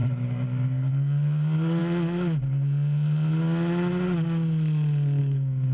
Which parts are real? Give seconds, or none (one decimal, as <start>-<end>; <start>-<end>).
1.8-5.2